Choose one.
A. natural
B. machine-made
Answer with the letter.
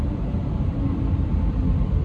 A